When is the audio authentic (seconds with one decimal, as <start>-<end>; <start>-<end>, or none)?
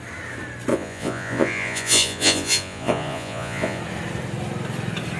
0.0-0.7; 3.8-5.2